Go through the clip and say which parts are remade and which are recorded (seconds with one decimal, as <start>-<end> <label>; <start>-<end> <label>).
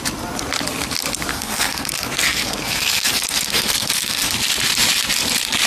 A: 0.0-1.3 recorded; 1.3-4.3 remade; 4.3-5.7 recorded